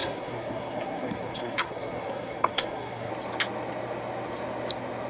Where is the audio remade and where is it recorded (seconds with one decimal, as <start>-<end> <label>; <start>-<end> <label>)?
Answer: 0.0-3.1 remade; 3.1-5.1 recorded